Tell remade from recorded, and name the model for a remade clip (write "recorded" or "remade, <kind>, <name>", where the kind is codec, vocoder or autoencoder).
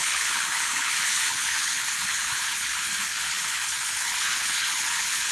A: remade, codec, HILCodec